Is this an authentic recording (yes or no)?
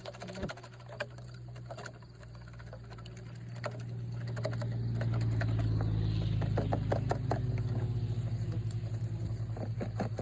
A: yes